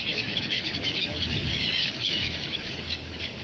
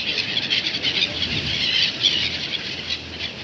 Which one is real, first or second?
second